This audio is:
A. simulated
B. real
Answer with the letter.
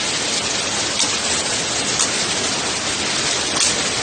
B